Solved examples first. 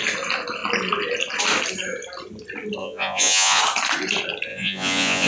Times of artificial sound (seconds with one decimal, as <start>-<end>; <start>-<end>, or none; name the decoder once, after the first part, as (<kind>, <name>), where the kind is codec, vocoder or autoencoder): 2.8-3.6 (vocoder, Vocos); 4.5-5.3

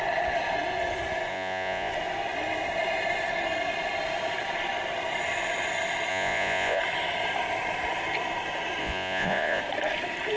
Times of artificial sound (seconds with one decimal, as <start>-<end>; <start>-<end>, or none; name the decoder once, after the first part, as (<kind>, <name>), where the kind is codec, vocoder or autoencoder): 1.3-1.9 (vocoder, Vocos); 6.1-6.8; 8.8-9.6

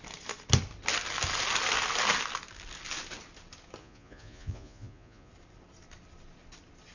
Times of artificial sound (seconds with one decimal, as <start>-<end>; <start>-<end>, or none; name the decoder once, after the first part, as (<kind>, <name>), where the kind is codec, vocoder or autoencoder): 3.8-5.3 (vocoder, Vocos)